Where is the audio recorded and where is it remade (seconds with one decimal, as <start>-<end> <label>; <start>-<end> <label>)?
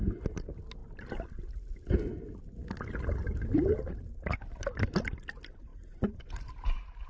0.0-5.7 recorded; 5.7-6.3 remade; 6.3-7.1 recorded